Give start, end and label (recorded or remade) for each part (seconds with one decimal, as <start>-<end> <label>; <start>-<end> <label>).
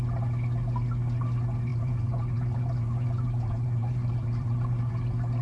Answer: 0.0-1.7 recorded; 1.7-4.9 remade; 4.9-5.4 recorded